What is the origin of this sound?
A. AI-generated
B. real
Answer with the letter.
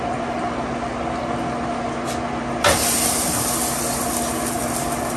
B